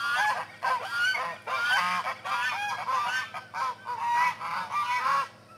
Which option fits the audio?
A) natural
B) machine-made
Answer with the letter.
A